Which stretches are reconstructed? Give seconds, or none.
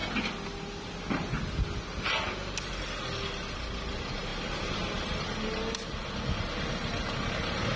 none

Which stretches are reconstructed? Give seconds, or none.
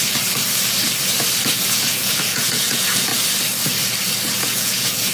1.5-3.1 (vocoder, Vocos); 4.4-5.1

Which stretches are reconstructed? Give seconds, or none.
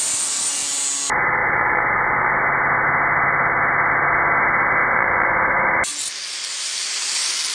1.4-2.3 (vocoder, Vocos); 4.8-5.3